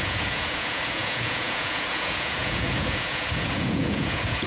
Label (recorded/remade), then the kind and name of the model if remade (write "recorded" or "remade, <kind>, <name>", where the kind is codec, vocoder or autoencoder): remade, vocoder, Vocos